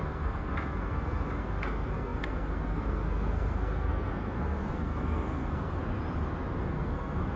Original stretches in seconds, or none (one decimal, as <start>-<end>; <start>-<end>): 5.8-6.6